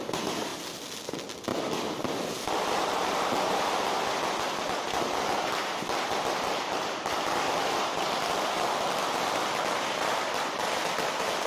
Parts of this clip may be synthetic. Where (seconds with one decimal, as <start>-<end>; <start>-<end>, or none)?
0.0-1.5; 2.4-11.5